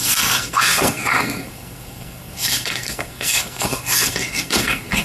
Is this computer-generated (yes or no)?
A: yes